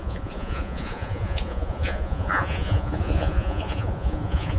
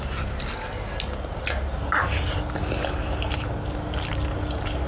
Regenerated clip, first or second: first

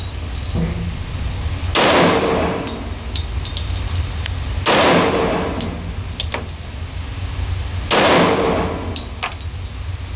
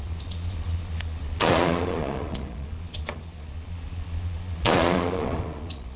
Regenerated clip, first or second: second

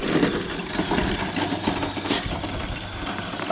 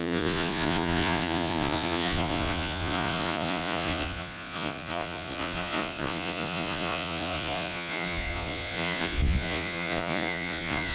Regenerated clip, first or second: second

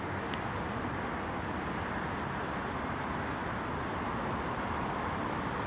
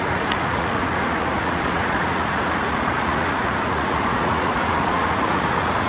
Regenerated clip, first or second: second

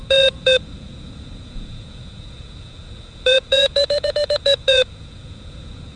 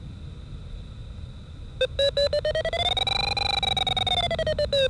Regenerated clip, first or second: first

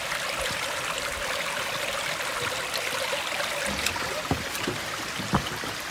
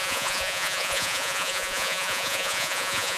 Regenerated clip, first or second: second